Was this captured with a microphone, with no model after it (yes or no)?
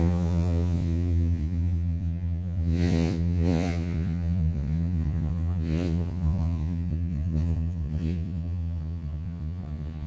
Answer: no